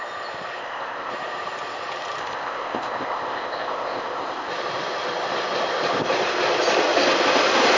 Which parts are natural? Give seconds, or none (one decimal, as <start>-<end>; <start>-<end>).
0.0-0.6; 1.1-2.2; 4.5-7.8